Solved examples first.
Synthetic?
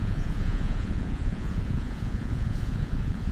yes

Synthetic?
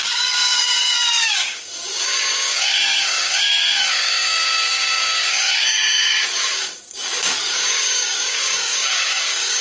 yes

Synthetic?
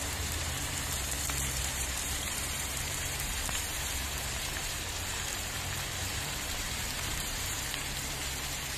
yes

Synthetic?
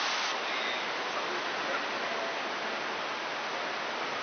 no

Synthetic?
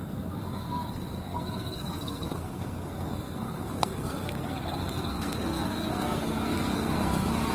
yes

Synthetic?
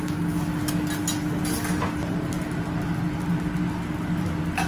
no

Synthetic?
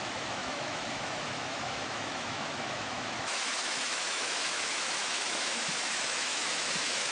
yes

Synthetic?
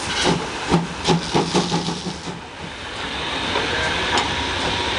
no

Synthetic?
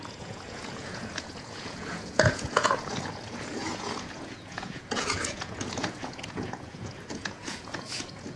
yes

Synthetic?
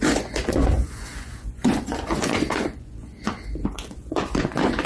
yes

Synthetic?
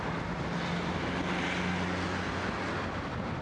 no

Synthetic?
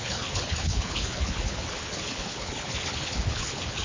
yes